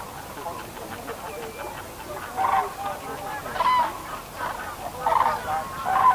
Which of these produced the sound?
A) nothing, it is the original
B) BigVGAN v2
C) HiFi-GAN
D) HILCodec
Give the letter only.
A